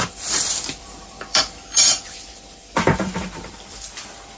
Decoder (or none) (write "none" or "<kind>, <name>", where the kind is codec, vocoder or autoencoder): vocoder, BigVGAN v2